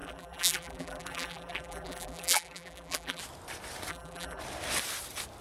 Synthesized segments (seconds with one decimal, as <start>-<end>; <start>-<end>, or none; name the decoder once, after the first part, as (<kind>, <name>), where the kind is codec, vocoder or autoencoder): 0.0-3.2 (vocoder, BigVGAN v2); 3.9-4.4